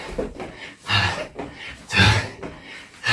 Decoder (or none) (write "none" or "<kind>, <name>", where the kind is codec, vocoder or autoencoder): none